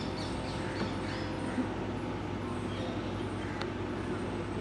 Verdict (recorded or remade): recorded